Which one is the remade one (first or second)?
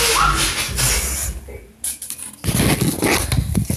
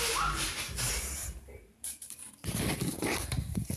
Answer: second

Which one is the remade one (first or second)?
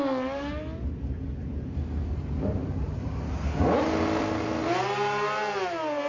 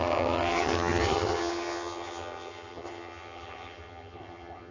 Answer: second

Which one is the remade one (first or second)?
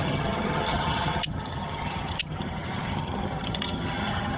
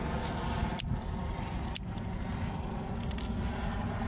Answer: first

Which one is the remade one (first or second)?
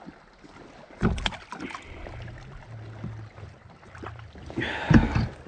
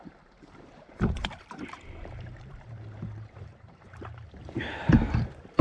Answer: second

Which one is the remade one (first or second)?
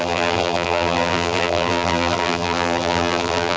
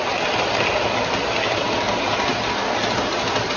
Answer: first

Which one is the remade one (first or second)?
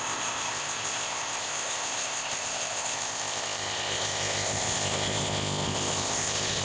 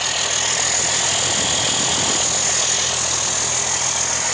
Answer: first